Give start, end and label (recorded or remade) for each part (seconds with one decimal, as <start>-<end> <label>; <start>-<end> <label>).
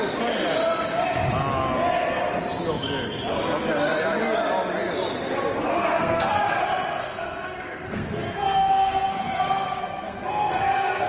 0.0-5.7 recorded; 5.7-6.4 remade; 6.4-7.0 recorded; 7.0-11.1 remade